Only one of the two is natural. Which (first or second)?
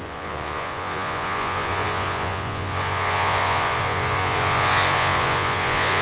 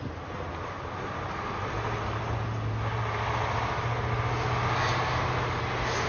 second